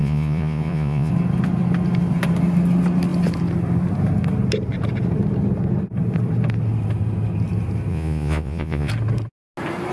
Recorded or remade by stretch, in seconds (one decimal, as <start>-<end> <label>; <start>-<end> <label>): 0.0-1.1 remade; 1.1-7.9 recorded; 7.9-8.9 remade; 8.9-9.9 recorded